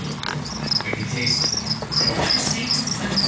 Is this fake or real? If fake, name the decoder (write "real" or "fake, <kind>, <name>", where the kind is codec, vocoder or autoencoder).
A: real